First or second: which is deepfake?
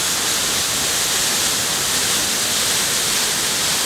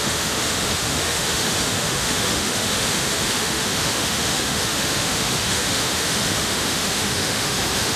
second